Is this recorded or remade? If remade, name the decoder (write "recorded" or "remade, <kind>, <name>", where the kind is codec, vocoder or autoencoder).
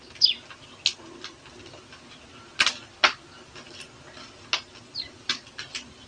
recorded